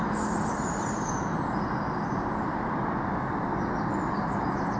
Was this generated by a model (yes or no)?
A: no